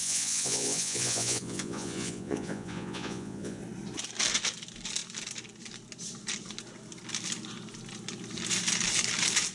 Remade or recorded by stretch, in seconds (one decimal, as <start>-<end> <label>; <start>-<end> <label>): 0.0-3.6 remade; 3.6-9.5 recorded

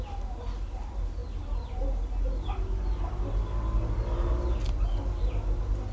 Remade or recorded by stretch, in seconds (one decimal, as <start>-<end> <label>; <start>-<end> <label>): 0.0-5.9 recorded

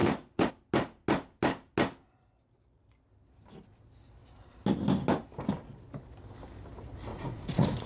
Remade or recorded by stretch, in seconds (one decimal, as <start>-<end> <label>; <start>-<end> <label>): 0.0-0.5 remade; 0.5-7.1 recorded; 7.1-7.9 remade

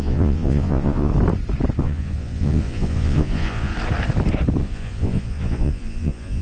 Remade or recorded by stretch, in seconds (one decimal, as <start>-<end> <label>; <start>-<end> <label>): 0.0-1.1 remade; 1.1-1.8 recorded; 1.8-3.7 remade; 3.7-4.6 recorded; 4.6-6.4 remade